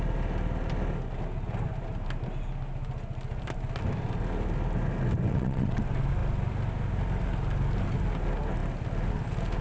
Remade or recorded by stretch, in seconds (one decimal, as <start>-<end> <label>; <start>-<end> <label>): 0.0-5.3 recorded; 5.3-5.8 remade; 5.8-9.6 recorded